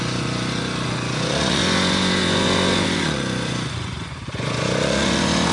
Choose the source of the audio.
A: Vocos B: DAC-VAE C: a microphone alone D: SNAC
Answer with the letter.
A